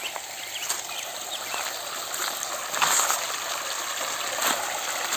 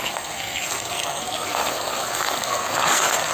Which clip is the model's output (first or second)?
second